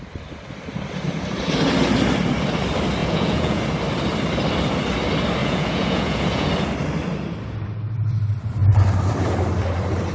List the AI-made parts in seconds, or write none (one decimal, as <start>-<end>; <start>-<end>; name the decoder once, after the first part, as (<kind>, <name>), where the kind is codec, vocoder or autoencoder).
3.0-3.6 (vocoder, Vocos); 5.4-6.5